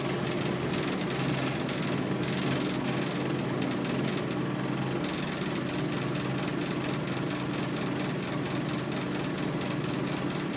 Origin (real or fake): real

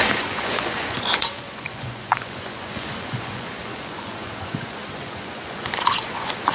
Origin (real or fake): fake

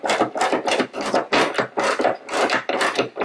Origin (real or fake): real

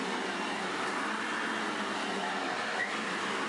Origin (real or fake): real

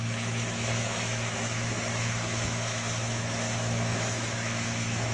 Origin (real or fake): fake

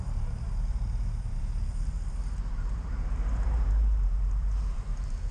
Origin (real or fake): fake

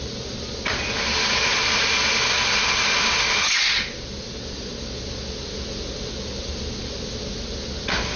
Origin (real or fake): real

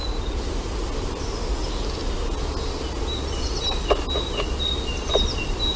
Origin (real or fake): real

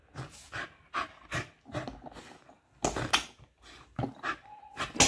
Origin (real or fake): real